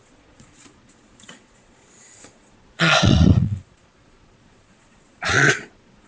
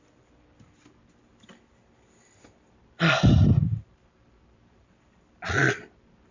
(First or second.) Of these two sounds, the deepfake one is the first